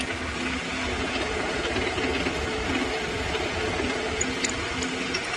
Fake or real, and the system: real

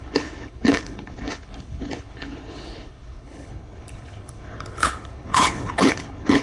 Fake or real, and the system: fake, codec, HILCodec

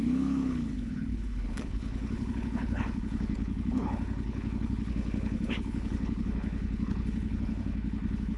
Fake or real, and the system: fake, codec, HILCodec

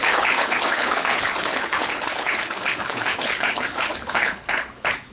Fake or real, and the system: fake, codec, HILCodec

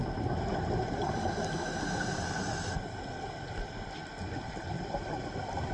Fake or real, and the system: real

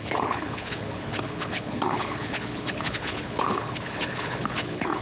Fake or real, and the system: fake, codec, HILCodec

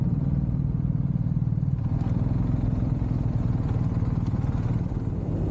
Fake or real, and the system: real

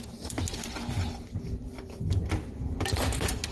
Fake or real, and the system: real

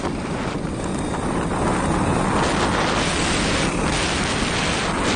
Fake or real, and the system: real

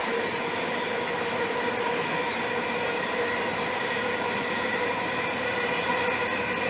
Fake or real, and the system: real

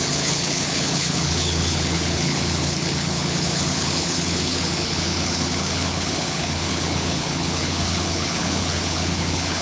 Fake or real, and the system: fake, codec, HILCodec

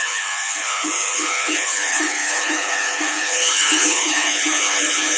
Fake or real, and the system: fake, codec, HILCodec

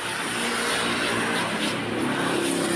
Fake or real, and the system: real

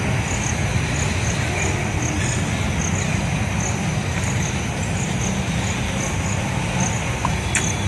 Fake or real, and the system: real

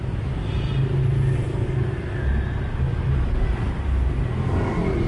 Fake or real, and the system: real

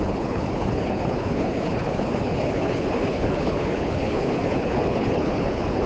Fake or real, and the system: fake, codec, HILCodec